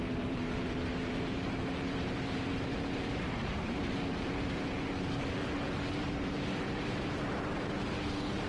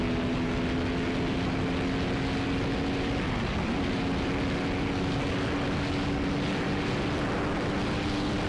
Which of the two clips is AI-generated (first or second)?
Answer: first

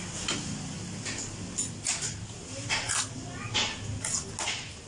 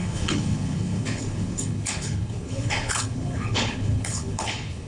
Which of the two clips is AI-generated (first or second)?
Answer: second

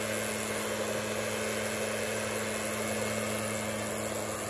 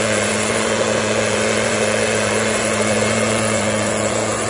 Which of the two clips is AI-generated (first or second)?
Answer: second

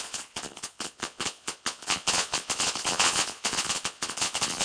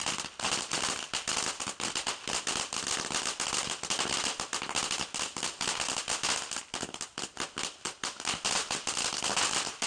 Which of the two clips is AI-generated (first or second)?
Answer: first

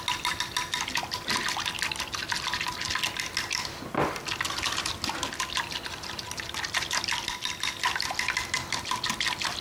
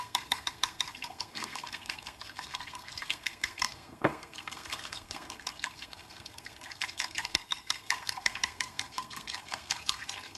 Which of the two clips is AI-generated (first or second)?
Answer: second